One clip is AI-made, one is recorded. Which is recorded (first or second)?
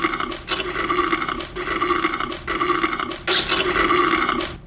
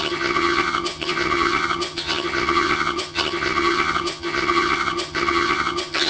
first